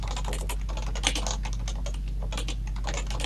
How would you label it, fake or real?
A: real